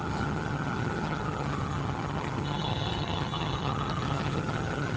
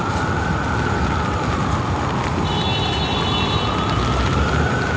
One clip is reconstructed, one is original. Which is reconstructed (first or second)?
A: first